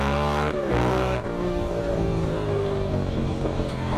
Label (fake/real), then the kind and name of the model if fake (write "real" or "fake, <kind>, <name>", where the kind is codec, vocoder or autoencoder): fake, codec, DAC